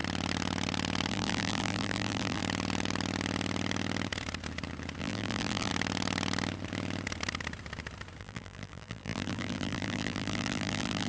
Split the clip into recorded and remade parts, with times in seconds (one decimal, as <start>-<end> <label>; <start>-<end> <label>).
0.0-1.1 recorded; 1.1-2.4 remade; 2.4-5.0 recorded; 5.0-5.7 remade; 5.7-8.2 recorded; 8.2-11.1 remade